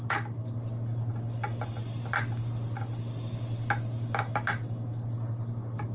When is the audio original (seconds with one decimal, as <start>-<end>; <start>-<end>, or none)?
0.0-5.9